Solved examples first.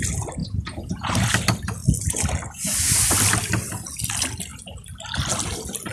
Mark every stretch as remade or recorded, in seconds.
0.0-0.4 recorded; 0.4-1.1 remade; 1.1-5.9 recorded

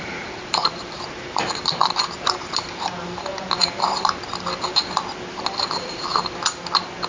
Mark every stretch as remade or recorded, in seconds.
0.0-4.3 remade; 4.3-5.3 recorded; 5.3-6.1 remade; 6.1-7.1 recorded

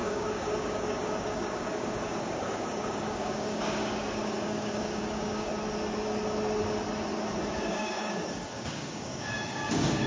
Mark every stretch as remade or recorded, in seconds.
0.0-5.5 remade; 5.5-7.5 recorded; 7.5-10.1 remade

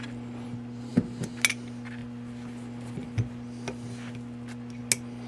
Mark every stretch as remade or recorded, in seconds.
0.0-5.3 recorded

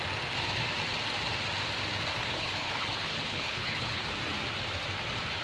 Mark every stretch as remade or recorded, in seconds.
0.0-2.1 recorded; 2.1-4.1 remade; 4.1-5.4 recorded

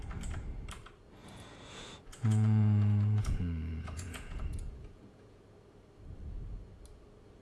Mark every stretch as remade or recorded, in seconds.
0.0-1.2 recorded; 1.2-5.4 remade; 5.4-7.4 recorded

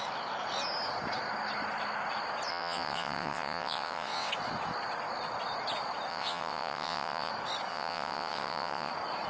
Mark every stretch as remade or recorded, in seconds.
0.0-2.5 recorded; 2.5-4.3 remade; 4.3-6.1 recorded; 6.1-7.3 remade; 7.3-7.7 recorded; 7.7-8.9 remade; 8.9-9.3 recorded